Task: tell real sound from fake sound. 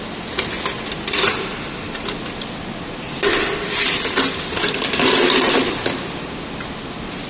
real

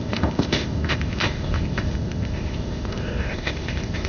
fake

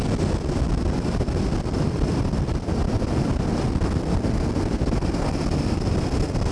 real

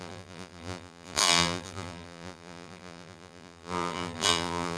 fake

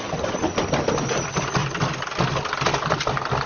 real